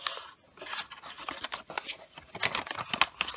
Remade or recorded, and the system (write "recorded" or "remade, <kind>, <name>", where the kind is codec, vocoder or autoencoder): recorded